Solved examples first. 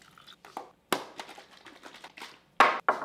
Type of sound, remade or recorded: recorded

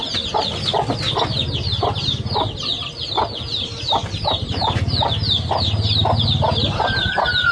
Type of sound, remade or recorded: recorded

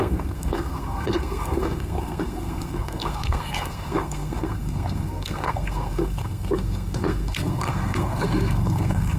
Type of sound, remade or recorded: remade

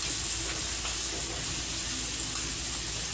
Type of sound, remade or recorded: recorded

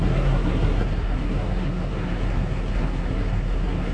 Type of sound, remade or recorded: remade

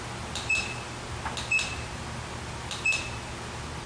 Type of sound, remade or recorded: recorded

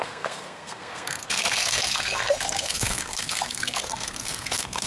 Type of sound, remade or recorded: remade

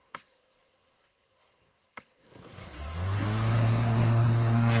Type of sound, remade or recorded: remade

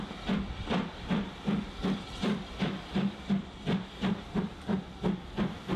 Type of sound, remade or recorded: recorded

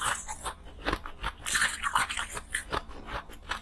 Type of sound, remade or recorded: recorded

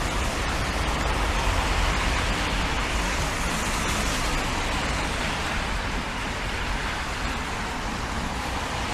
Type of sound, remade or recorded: recorded